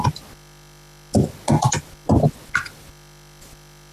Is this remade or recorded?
recorded